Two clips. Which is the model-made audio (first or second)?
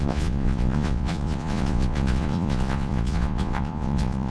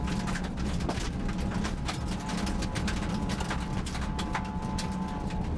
first